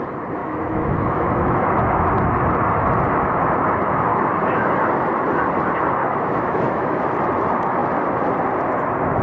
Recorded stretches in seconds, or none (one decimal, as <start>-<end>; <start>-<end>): 0.0-0.4; 2.1-4.1; 4.7-6.0; 7.1-9.2